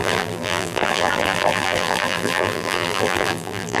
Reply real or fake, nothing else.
fake